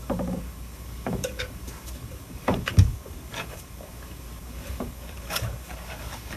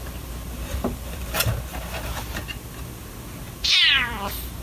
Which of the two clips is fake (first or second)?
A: first